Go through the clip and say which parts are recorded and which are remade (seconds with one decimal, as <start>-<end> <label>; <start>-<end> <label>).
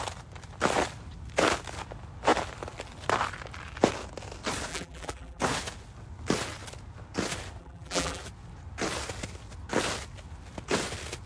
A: 0.0-4.7 recorded; 4.7-5.4 remade; 5.4-7.6 recorded; 7.6-8.2 remade; 8.2-11.3 recorded